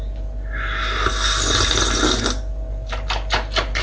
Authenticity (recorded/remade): recorded